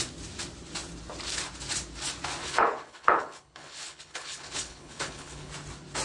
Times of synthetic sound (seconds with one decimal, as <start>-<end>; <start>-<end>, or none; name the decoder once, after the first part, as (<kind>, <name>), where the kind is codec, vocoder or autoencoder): 2.4-5.5 (codec, HILCodec)